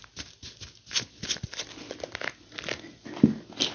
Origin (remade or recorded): recorded